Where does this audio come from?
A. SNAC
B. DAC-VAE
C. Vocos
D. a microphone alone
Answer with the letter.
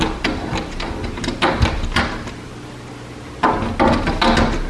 D